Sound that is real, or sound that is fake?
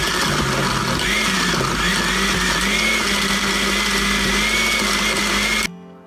real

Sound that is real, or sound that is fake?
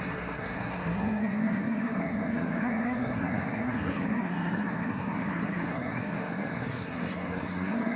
fake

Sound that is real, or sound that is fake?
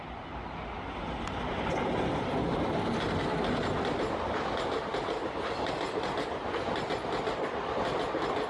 real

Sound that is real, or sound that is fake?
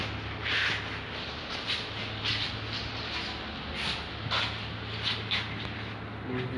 real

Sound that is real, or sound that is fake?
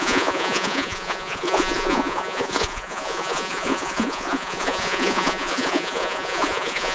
fake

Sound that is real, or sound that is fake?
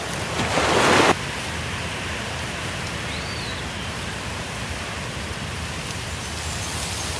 real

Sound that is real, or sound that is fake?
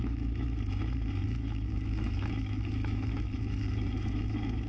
fake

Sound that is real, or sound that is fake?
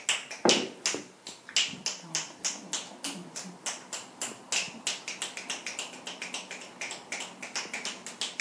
real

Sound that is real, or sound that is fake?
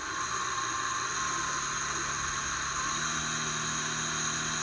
real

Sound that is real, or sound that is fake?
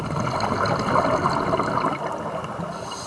real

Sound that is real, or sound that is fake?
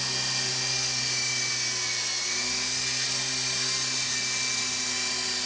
real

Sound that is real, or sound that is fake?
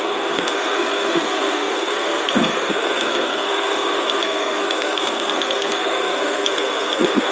fake